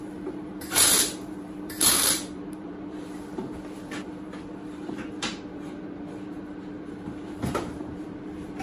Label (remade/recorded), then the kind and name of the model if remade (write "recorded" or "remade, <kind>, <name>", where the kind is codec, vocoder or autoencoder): remade, vocoder, BigVGAN v2